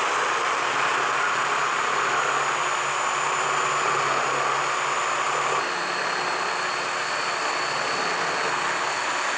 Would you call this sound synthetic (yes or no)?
no